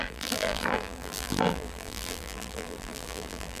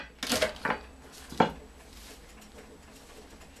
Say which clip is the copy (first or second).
first